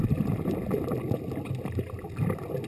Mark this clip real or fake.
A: real